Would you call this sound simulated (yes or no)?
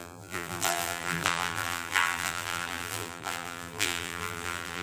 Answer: yes